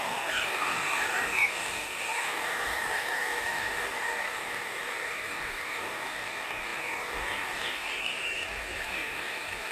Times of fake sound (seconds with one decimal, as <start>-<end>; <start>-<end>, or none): 0.0-9.7